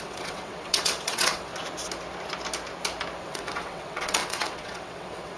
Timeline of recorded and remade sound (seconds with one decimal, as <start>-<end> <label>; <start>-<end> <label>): 0.0-1.5 remade; 1.5-3.2 recorded; 3.2-5.4 remade